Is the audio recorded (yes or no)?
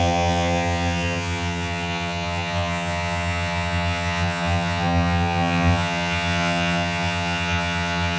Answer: no